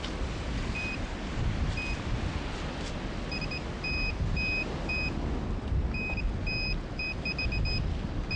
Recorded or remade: recorded